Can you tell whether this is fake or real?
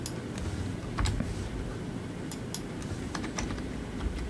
real